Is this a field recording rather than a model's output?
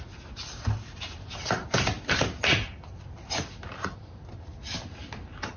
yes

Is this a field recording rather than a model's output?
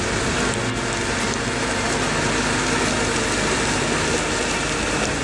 yes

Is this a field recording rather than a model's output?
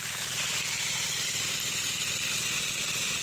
no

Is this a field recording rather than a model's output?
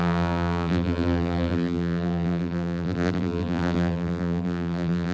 no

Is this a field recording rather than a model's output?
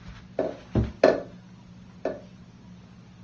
yes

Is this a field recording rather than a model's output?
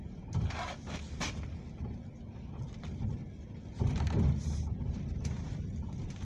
yes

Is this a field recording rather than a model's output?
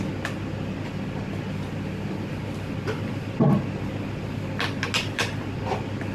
yes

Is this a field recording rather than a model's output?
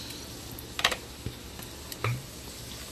yes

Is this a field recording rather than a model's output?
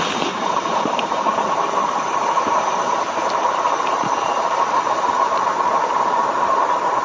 no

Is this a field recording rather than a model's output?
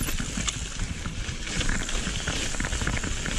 yes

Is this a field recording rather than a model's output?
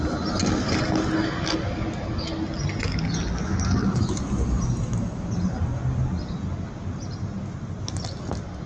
yes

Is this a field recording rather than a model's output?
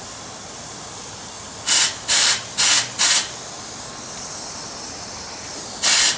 no